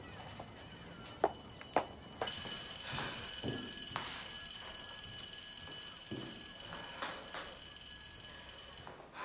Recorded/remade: recorded